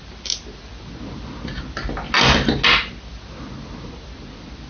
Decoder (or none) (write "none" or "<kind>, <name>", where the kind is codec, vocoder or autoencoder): none